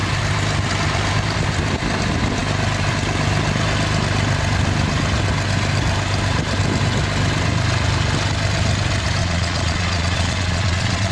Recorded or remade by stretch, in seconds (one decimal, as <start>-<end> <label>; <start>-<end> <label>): 0.0-9.2 recorded; 9.2-11.1 remade